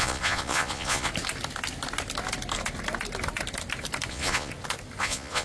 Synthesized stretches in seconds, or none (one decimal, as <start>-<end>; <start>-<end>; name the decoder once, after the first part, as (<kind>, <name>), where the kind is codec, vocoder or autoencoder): 0.0-1.1 (vocoder, Vocos); 4.1-4.5; 5.0-5.4